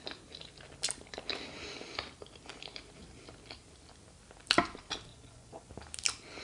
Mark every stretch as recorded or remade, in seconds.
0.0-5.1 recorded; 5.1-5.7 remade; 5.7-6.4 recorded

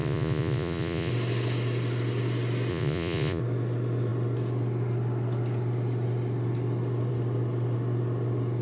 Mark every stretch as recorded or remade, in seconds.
0.0-1.1 remade; 1.1-2.7 recorded; 2.7-3.4 remade; 3.4-8.6 recorded

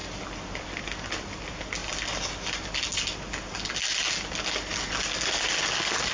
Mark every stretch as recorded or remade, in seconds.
0.0-6.1 recorded

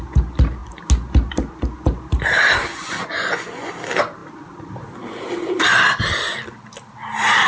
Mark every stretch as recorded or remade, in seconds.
0.0-2.7 recorded; 2.7-3.7 remade; 3.7-7.5 recorded

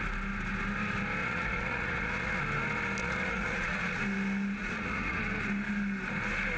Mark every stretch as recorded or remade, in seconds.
0.0-1.2 recorded; 1.2-2.4 remade; 2.4-3.0 recorded; 3.0-4.0 remade; 4.0-4.6 recorded; 4.6-5.2 remade; 5.2-6.6 recorded